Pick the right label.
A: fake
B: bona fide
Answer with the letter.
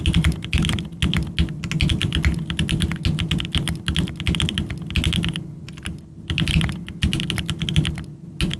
B